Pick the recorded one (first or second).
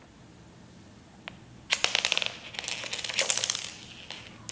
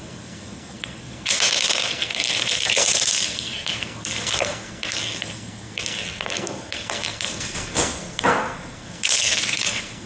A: first